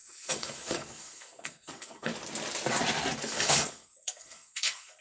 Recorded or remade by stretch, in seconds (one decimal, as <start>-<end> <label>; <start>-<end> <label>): 0.0-2.1 remade; 2.1-3.2 recorded; 3.2-5.0 remade